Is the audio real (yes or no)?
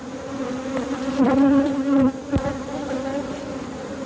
no